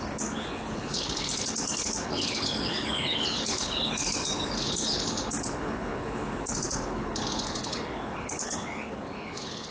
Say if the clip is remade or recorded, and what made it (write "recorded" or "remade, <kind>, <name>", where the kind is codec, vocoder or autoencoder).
remade, codec, HILCodec